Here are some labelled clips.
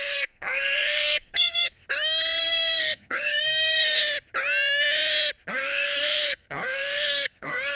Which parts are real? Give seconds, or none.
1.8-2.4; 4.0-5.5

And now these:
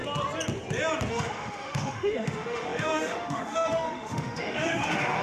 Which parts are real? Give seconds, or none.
0.0-1.1

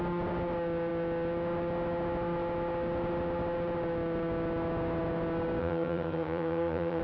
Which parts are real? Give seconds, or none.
0.0-5.6

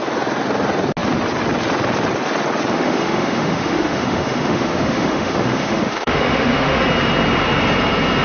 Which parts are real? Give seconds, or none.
0.0-2.7; 6.8-8.2

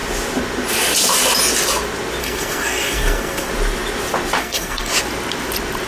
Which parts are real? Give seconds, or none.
0.0-2.2; 3.5-4.4; 4.9-5.9